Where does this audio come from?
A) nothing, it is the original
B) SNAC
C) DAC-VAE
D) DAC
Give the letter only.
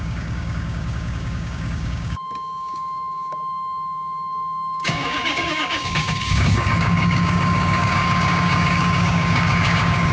D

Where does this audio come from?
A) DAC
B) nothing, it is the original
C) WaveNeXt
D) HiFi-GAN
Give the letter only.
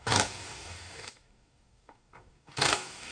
A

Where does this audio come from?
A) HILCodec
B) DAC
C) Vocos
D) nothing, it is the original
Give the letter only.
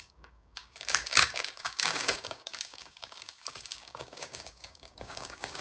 B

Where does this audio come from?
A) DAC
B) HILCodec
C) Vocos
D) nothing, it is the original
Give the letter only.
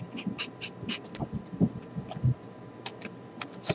D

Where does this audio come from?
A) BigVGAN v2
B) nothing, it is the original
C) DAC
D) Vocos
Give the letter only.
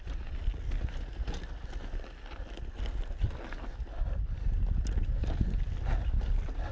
B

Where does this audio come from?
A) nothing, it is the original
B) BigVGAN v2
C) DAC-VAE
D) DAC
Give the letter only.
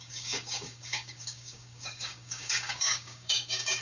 D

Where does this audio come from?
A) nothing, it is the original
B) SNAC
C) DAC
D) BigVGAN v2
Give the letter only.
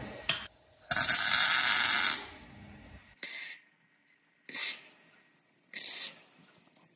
A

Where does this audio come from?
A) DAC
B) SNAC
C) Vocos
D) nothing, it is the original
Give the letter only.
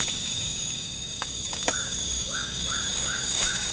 A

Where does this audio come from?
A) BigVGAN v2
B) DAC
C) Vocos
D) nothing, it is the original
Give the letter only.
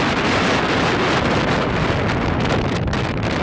D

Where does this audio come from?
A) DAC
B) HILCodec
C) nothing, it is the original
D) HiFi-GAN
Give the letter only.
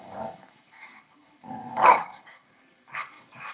A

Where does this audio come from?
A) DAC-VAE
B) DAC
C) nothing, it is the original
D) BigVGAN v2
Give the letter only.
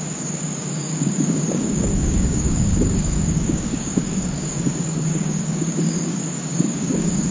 B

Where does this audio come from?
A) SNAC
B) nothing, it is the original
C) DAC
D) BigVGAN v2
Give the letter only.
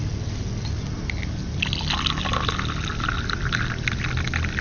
B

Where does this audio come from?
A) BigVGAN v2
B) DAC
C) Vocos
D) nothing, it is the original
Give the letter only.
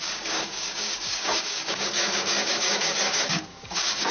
B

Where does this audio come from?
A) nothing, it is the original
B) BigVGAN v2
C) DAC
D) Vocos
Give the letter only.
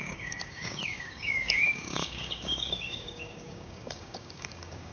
C